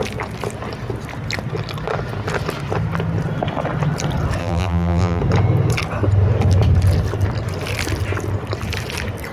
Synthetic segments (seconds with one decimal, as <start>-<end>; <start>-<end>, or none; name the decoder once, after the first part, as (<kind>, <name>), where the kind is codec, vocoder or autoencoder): 4.4-5.2 (vocoder, BigVGAN v2)